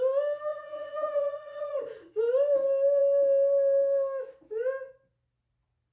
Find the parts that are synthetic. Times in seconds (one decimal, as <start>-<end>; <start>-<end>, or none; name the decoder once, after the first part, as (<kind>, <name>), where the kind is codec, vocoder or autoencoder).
0.5-2.2 (vocoder, Vocos)